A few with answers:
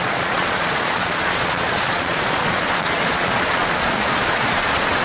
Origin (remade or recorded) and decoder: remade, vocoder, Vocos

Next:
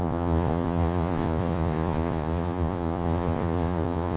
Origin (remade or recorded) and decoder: remade, vocoder, Vocos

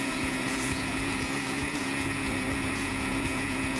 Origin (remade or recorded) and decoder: remade, vocoder, Vocos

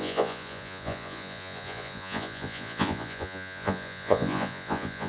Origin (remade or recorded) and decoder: remade, vocoder, Vocos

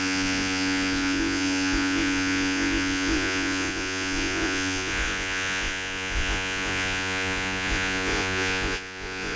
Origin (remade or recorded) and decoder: remade, vocoder, Vocos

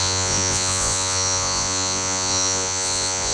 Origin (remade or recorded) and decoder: remade, vocoder, Vocos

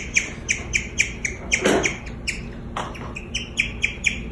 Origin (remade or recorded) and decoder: recorded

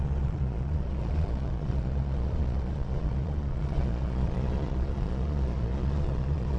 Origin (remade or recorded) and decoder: remade, vocoder, Vocos